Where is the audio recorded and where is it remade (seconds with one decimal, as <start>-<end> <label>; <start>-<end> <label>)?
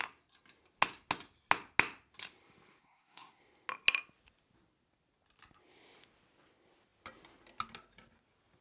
0.0-2.8 recorded; 2.8-3.4 remade; 3.4-8.6 recorded